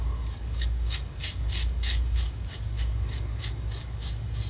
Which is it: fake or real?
fake